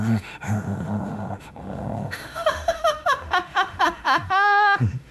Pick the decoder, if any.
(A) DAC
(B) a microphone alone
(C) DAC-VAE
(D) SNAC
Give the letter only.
C